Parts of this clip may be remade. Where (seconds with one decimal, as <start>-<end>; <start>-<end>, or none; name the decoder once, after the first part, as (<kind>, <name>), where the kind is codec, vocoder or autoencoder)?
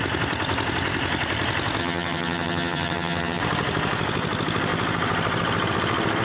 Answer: 1.8-3.4 (vocoder, HiFi-GAN)